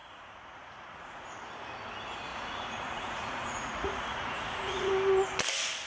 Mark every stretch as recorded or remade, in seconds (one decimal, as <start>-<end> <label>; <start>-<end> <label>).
0.0-1.3 remade; 1.3-2.3 recorded; 2.3-4.9 remade; 4.9-5.9 recorded